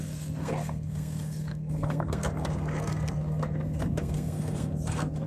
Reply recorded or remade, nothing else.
remade